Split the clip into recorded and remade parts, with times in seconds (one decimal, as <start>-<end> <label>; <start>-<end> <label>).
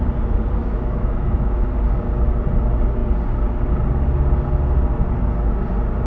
0.0-0.6 recorded; 0.6-1.7 remade; 1.7-6.1 recorded